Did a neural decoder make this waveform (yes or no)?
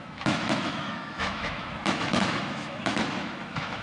yes